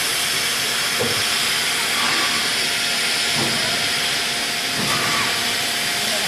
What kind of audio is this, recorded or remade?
recorded